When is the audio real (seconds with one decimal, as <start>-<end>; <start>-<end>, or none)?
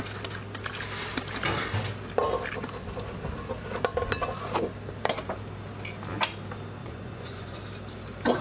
0.0-6.8; 7.6-8.4